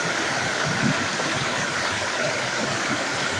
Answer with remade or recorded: remade